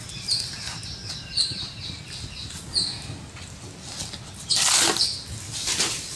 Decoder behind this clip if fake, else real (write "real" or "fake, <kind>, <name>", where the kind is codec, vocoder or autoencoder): real